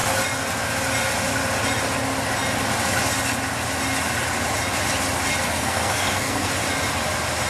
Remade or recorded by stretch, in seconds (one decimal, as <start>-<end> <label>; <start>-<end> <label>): 0.0-5.4 recorded; 5.4-6.5 remade; 6.5-7.5 recorded